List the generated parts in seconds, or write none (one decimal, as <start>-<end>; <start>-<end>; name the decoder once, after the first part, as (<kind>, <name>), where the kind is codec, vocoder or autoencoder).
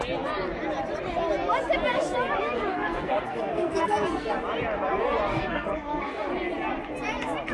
2.7-4.3 (codec, SNAC); 5.3-6.3